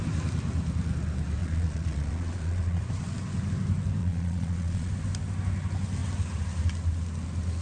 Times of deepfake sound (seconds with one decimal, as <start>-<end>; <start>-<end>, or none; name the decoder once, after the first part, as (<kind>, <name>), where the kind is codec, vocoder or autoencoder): 1.4-2.8 (vocoder, Vocos); 4.0-4.9

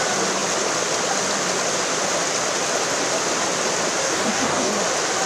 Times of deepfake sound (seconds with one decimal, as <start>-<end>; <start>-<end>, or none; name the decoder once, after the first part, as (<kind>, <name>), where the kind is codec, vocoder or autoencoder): 4.0-4.8 (codec, DAC)